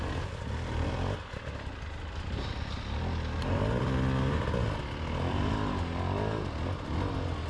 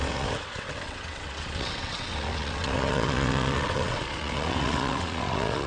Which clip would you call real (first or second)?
first